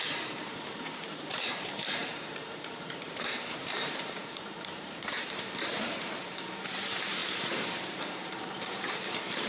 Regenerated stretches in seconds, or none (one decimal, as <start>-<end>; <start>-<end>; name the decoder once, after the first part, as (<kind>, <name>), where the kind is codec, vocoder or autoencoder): 0.0-9.5 (vocoder, BigVGAN v2)